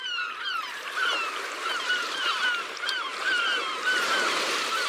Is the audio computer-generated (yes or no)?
yes